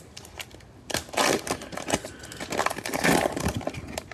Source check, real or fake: real